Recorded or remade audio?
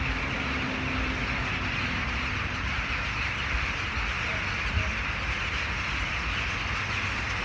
recorded